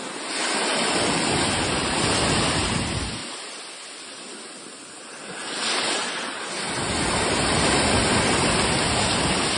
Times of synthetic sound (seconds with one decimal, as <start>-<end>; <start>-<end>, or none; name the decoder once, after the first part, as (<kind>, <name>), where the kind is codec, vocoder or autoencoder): 0.7-2.2 (vocoder, BigVGAN v2)